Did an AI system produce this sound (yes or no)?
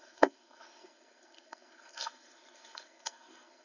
yes